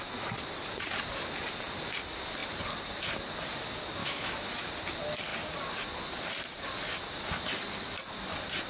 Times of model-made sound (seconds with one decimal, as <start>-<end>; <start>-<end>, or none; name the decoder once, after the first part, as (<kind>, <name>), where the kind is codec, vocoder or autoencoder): 4.0-4.7 (autoencoder, DAC-VAE)